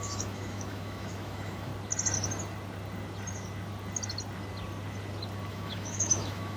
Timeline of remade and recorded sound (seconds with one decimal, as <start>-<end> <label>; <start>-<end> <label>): 0.0-1.7 remade; 1.7-5.5 recorded; 5.5-6.6 remade